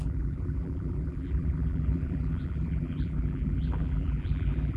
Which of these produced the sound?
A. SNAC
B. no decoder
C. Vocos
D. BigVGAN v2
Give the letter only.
D